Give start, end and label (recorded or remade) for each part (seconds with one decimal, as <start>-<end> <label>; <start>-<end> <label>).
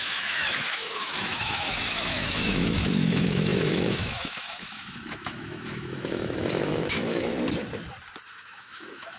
0.0-7.3 remade; 7.3-8.3 recorded; 8.3-9.2 remade